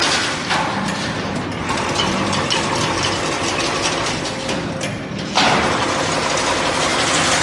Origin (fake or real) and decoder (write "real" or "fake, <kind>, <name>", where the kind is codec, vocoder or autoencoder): real